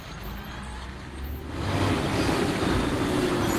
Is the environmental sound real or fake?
real